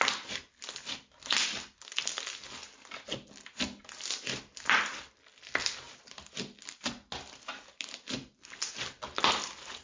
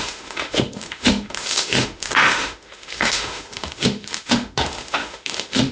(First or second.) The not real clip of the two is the second